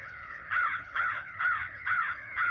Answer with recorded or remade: remade